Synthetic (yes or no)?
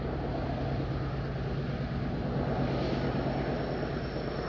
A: no